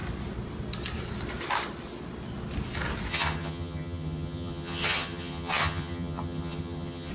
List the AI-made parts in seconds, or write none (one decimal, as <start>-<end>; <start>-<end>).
3.1-7.1